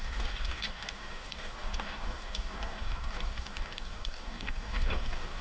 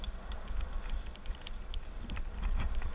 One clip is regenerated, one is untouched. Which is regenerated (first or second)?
first